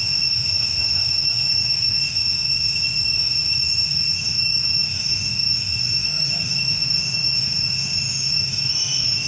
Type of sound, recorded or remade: remade